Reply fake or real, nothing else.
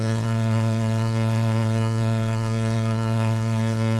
fake